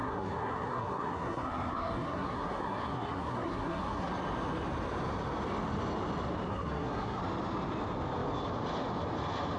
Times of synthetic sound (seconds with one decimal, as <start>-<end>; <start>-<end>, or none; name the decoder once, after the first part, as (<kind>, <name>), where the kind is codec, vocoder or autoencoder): 0.0-4.1 (codec, SNAC); 6.5-7.2